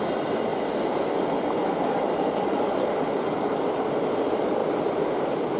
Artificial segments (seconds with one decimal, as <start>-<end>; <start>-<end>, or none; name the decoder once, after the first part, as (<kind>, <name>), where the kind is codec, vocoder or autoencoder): none